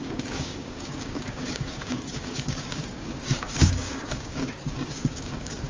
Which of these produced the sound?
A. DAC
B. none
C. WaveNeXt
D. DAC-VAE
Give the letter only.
A